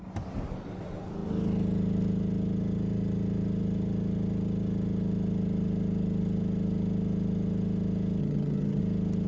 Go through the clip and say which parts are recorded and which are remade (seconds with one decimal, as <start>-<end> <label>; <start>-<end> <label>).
0.0-8.2 recorded; 8.2-8.8 remade; 8.8-9.3 recorded